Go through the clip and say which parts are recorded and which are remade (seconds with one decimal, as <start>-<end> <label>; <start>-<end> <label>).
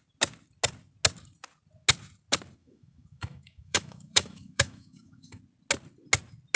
0.0-2.6 recorded; 2.6-5.4 remade; 5.4-6.6 recorded